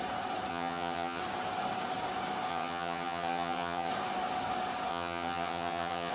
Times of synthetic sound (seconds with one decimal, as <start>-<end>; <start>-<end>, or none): 0.5-1.2; 2.5-3.9; 4.9-6.1